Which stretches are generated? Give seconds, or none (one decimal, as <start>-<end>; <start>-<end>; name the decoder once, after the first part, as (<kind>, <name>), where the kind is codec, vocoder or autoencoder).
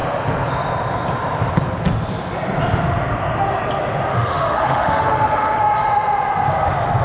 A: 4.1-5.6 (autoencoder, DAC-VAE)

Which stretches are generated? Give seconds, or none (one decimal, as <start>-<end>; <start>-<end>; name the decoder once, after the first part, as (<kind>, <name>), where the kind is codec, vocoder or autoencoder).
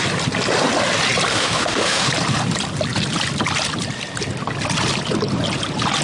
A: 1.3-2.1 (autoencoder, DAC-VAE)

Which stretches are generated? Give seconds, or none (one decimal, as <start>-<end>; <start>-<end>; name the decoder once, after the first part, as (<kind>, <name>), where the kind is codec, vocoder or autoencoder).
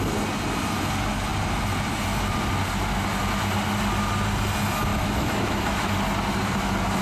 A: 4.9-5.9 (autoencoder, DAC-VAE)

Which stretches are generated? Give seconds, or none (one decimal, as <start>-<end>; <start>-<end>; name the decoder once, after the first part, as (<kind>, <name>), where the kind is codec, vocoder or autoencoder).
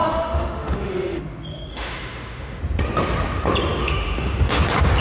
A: 0.0-1.2 (autoencoder, DAC-VAE); 1.7-2.6; 3.8-4.6